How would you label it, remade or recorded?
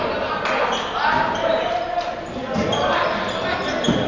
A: recorded